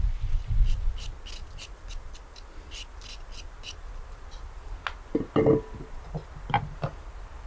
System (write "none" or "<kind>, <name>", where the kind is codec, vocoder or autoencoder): none